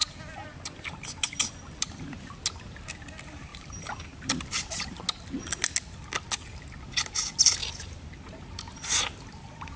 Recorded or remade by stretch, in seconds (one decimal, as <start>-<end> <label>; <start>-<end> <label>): 0.0-3.5 recorded; 3.5-5.0 remade; 5.0-9.8 recorded